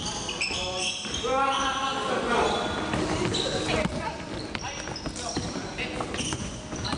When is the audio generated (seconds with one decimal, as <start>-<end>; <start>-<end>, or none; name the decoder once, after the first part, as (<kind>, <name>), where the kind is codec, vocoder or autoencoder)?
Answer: 6.1-6.6 (vocoder, Vocos)